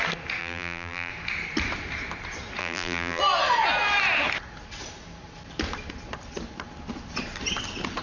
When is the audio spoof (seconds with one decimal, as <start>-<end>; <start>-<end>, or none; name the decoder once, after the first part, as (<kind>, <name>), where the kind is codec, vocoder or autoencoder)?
0.4-1.1 (vocoder, BigVGAN v2); 2.6-3.2